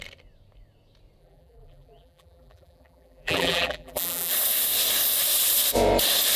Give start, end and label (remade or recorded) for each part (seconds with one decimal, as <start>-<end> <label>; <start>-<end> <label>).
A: 0.0-1.2 recorded; 1.2-4.3 remade; 4.3-6.4 recorded